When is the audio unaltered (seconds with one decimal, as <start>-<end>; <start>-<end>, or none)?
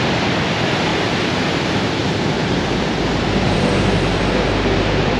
0.0-0.9; 1.5-2.0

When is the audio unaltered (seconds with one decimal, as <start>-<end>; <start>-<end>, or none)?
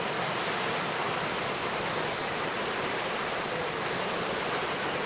0.0-1.6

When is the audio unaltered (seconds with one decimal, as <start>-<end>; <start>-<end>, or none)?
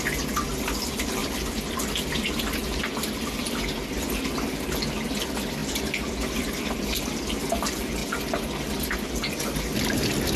0.0-1.2; 4.0-10.4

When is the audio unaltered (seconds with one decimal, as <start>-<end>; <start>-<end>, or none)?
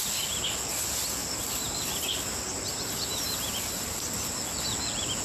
0.0-1.2; 3.6-5.2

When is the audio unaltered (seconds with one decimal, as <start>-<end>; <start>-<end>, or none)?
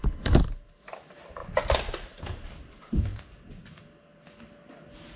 0.0-5.2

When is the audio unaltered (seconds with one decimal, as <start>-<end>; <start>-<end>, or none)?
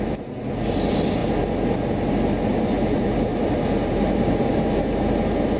0.0-2.5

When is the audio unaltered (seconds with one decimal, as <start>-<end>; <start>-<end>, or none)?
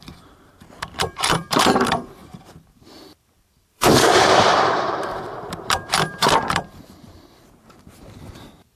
none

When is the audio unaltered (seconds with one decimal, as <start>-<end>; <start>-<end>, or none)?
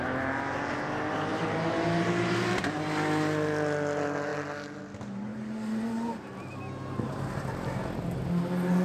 0.0-1.3; 2.6-5.3; 6.3-8.8